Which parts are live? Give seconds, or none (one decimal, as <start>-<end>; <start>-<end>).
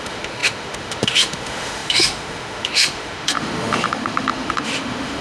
none